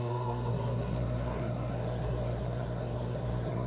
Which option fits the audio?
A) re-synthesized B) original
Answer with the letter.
A